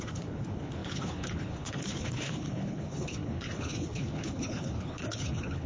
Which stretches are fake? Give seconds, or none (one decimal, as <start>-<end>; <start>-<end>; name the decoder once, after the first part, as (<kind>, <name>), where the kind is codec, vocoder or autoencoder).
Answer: 0.0-5.7 (codec, HILCodec)